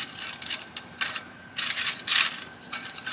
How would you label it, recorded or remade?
recorded